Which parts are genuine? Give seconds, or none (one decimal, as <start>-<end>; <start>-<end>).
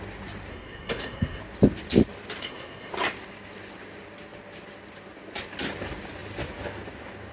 0.0-0.5; 1.4-2.4; 2.9-7.3